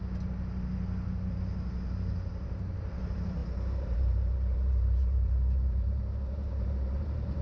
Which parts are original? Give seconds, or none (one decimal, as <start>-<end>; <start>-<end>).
0.0-2.1